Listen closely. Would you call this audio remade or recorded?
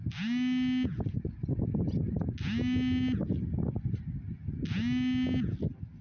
recorded